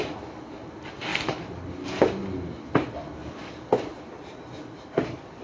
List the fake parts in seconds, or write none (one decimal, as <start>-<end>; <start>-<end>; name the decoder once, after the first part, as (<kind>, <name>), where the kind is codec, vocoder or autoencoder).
none